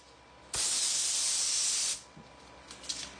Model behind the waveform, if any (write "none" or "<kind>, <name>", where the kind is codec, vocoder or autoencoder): none